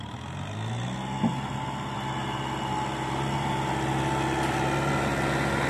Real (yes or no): yes